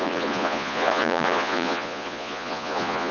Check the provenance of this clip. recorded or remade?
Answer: remade